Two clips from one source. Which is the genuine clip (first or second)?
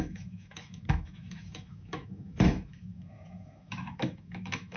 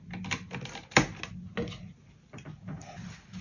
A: second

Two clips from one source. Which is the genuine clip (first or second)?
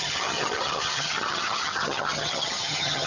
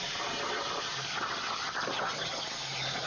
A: second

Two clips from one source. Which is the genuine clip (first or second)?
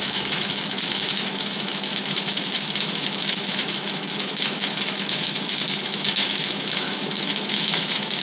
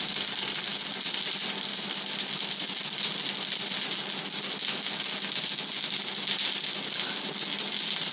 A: second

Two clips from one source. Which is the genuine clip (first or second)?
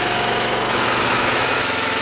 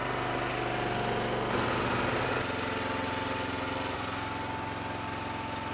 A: second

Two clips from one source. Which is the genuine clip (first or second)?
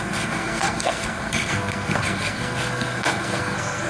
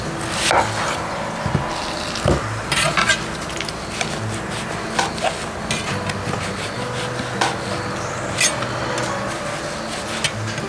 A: second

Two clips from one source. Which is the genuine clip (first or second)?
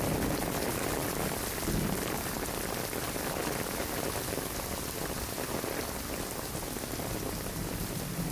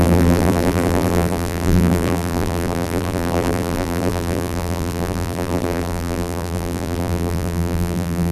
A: first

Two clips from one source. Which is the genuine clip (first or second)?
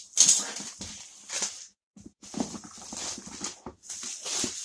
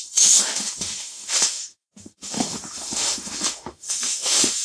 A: first